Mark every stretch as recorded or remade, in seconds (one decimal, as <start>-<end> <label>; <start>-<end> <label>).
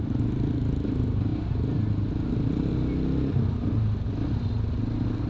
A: 0.0-5.3 recorded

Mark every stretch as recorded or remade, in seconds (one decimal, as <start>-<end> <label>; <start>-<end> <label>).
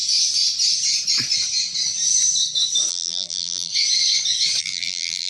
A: 0.0-2.9 recorded; 2.9-3.7 remade; 3.7-4.6 recorded; 4.6-5.3 remade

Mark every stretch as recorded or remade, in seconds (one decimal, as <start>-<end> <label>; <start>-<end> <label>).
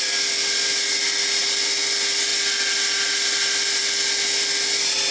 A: 0.0-5.1 recorded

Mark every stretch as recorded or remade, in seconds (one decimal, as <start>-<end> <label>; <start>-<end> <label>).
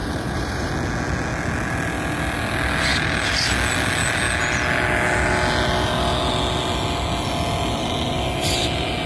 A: 0.0-0.7 remade; 0.7-9.1 recorded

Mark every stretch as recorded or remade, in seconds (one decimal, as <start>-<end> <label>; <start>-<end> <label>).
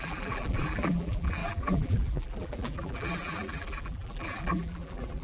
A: 0.0-5.2 remade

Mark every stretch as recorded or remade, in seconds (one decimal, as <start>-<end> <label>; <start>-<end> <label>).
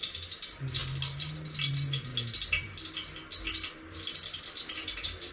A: 0.0-0.8 remade; 0.8-1.7 recorded; 1.7-2.1 remade; 2.1-4.6 recorded; 4.6-5.3 remade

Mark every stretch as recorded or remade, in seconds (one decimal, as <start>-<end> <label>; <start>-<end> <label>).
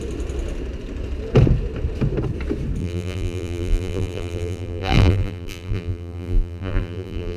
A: 0.0-2.8 recorded; 2.8-7.4 remade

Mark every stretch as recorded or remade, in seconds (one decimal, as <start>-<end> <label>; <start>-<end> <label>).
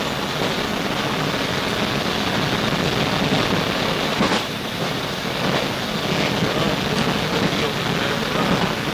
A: 0.0-4.1 recorded; 4.1-5.2 remade; 5.2-8.9 recorded